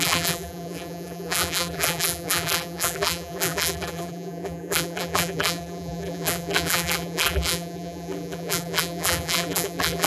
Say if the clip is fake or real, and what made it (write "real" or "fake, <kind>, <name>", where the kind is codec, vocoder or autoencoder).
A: fake, vocoder, BigVGAN v2